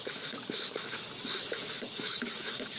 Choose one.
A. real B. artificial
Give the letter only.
B